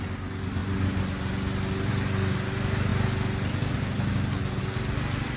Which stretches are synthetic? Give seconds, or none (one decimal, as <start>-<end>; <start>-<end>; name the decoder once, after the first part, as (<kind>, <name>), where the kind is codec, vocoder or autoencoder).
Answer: none

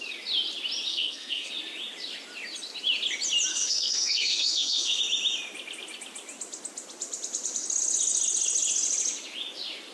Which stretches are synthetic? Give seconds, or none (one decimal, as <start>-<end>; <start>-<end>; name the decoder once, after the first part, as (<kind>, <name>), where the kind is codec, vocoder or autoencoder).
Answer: 0.9-1.5 (codec, SNAC); 3.5-5.0

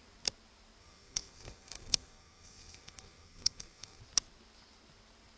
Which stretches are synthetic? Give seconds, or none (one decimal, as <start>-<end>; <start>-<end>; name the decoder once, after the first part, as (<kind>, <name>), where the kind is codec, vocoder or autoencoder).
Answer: 0.8-4.0 (codec, SNAC)

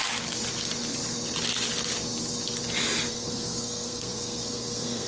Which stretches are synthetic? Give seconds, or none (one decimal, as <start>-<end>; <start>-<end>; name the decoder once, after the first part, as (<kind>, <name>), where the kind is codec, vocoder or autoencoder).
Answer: 3.1-5.1 (codec, SNAC)

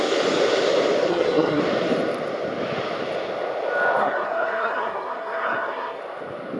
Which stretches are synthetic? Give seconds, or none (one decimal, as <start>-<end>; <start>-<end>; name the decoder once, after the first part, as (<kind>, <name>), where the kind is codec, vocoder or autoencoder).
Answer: 1.1-1.6 (codec, SNAC); 4.0-6.0

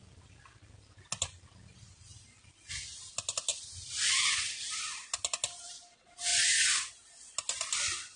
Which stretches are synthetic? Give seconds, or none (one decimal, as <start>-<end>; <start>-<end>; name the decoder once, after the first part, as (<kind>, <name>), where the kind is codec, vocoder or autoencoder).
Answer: none

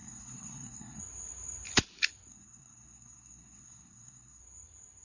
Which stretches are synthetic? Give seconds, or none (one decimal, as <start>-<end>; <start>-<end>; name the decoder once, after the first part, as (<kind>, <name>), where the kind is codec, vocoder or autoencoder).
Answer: 0.0-1.0 (codec, SNAC); 2.3-4.4

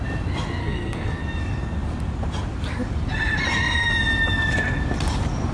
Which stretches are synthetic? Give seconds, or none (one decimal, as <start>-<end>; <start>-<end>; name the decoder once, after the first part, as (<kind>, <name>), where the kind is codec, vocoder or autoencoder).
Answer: 0.6-1.2 (codec, SNAC)